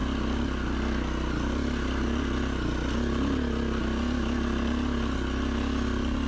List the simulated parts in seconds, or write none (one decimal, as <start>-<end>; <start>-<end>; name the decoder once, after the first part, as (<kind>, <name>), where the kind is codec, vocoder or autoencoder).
none